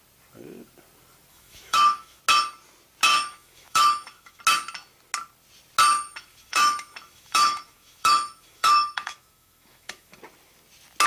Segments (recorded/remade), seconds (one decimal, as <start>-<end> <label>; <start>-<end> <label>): 0.0-1.3 recorded; 1.3-2.2 remade; 2.2-3.1 recorded; 3.1-4.4 remade; 4.4-5.9 recorded; 5.9-10.2 remade; 10.2-11.1 recorded